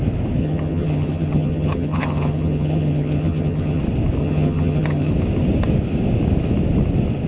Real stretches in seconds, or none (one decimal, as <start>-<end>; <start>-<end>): 0.0-0.4; 3.8-4.2; 5.1-7.3